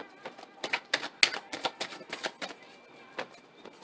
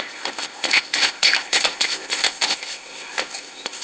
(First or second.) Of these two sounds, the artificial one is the second